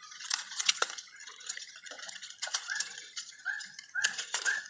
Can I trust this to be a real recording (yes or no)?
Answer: no